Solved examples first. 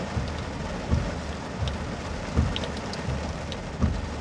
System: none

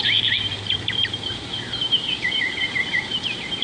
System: vocoder, BigVGAN v2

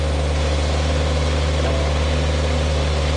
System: none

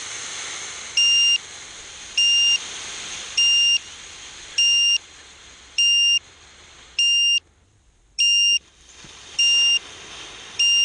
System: none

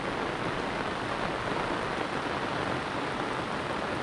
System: none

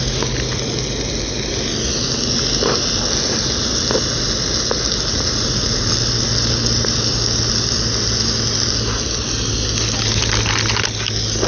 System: none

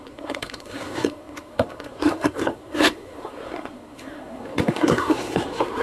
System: codec, SNAC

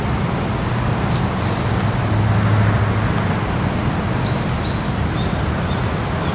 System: none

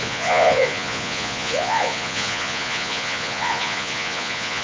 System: vocoder, Vocos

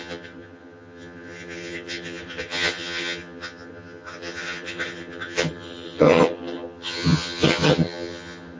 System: vocoder, HiFi-GAN